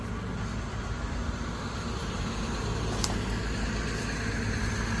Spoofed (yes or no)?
no